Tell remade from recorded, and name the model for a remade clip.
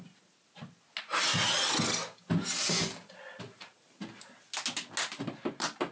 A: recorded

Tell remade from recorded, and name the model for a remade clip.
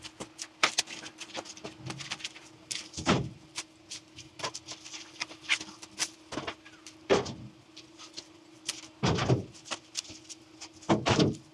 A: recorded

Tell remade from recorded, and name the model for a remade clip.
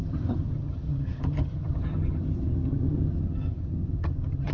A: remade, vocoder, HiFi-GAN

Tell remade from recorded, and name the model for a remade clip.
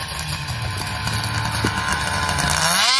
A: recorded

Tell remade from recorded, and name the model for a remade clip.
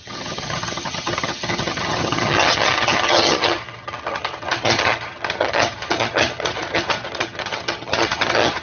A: remade, vocoder, HiFi-GAN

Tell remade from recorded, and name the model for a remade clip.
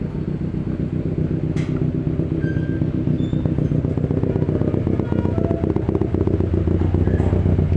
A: recorded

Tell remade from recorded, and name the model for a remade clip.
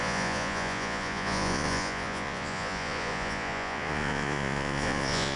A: remade, vocoder, Vocos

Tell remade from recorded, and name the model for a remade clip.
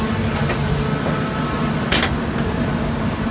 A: recorded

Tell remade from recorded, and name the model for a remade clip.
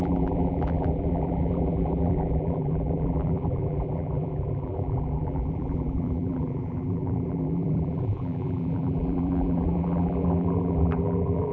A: remade, vocoder, BigVGAN v2